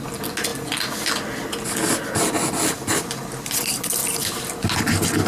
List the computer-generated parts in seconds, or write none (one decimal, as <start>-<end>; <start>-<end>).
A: none